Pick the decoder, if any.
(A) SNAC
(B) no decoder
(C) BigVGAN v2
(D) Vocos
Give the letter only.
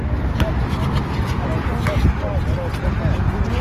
B